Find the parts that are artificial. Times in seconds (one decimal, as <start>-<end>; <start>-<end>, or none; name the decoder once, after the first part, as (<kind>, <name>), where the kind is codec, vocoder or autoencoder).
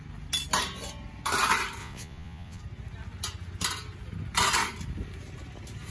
1.8-2.6 (vocoder, Vocos)